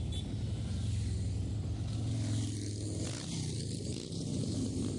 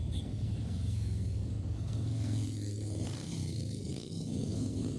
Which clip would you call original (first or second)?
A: first